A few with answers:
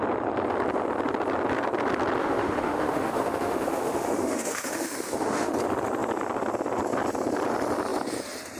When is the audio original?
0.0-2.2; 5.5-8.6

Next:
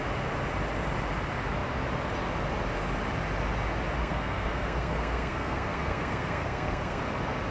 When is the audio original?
0.0-4.0; 7.0-7.5

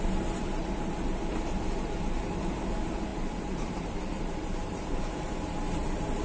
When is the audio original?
0.0-0.4; 0.9-3.1; 5.1-6.2

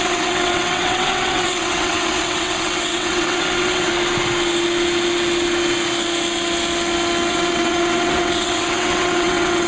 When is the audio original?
3.9-7.3